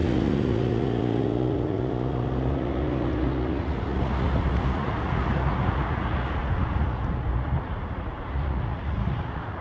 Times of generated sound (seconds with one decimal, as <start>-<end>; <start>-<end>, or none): 0.0-9.6